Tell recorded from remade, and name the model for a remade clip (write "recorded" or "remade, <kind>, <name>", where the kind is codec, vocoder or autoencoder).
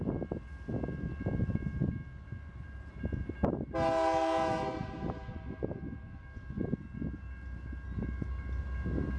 recorded